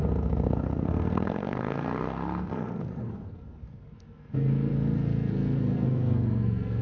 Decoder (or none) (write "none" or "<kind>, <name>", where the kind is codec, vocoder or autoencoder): codec, SNAC